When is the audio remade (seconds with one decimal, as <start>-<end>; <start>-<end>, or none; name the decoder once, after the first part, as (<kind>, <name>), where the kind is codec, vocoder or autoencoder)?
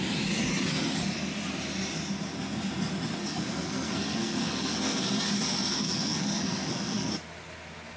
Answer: 3.2-5.1 (codec, SNAC); 5.7-7.1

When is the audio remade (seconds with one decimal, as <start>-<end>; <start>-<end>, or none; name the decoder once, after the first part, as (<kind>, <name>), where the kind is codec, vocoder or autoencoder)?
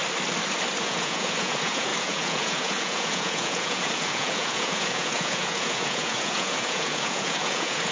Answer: 0.8-7.9 (vocoder, Vocos)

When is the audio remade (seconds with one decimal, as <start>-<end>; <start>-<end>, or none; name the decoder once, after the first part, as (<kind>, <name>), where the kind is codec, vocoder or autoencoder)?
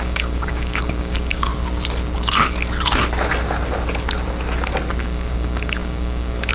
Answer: 0.0-1.5 (codec, DAC); 5.0-6.5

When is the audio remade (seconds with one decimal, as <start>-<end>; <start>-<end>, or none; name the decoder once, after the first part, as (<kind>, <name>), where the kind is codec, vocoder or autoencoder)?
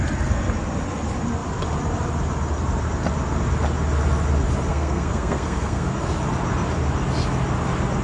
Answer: 4.7-5.9 (codec, SNAC)